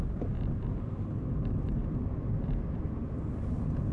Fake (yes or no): no